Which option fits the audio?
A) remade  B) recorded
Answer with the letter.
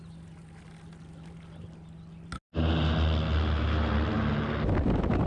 B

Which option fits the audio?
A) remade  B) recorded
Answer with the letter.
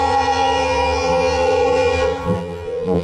A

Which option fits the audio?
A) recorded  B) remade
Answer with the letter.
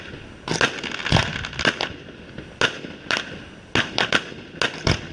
A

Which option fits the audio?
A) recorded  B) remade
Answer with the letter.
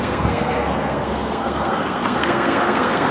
B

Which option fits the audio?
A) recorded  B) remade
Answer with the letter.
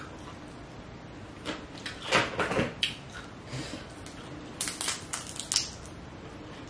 A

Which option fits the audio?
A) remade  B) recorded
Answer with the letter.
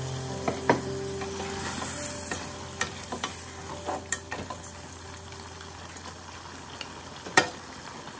B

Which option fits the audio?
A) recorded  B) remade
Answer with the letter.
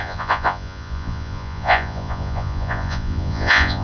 B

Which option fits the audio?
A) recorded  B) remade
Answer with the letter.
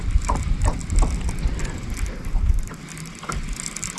A